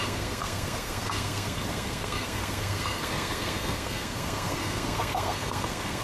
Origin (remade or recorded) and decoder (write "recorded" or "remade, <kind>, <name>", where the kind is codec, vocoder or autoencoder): remade, codec, SNAC